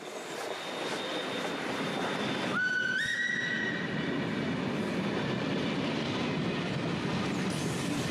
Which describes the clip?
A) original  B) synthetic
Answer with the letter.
A